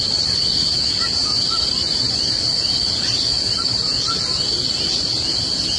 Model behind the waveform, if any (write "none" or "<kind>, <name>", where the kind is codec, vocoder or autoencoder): none